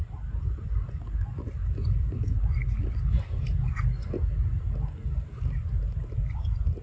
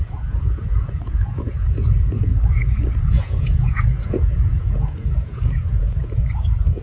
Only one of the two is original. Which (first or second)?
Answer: first